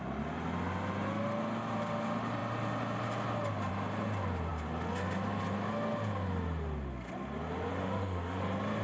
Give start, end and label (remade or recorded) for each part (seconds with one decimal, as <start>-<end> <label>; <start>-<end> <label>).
0.0-7.8 recorded; 7.8-8.4 remade; 8.4-8.8 recorded